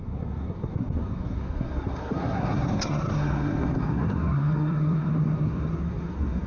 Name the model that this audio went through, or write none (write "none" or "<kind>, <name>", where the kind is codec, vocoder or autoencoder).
codec, SNAC